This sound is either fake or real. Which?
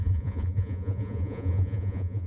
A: fake